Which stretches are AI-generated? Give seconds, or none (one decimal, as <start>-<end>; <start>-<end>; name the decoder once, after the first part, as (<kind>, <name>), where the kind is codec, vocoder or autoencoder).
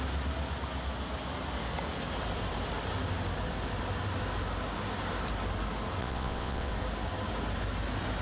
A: 6.0-6.7 (vocoder, WaveNeXt)